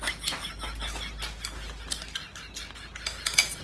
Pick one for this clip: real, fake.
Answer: real